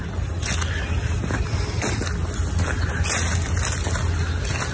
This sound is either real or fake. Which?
real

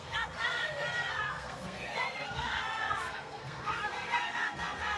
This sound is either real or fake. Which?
fake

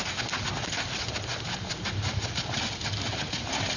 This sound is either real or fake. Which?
real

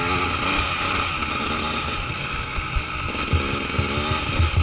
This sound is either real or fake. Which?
real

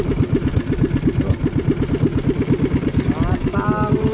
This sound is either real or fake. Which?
real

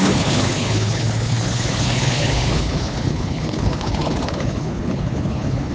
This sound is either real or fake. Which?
fake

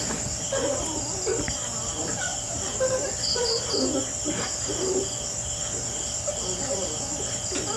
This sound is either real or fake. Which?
real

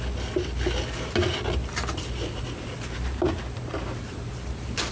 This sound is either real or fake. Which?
real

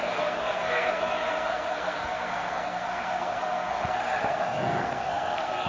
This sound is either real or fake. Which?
fake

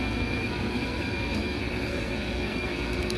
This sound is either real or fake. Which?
fake